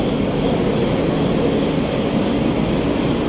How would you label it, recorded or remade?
recorded